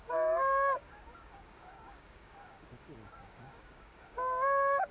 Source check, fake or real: fake